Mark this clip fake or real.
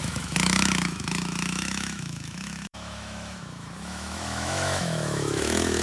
fake